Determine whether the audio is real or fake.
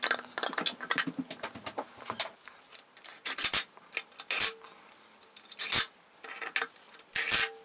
real